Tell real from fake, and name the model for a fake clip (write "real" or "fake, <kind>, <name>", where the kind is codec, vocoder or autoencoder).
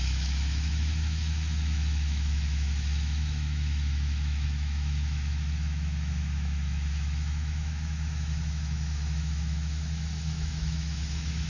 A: fake, autoencoder, DAC-VAE